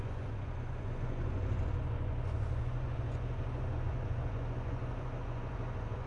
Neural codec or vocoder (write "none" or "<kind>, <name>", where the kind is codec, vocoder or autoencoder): vocoder, Vocos